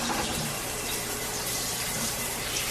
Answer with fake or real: fake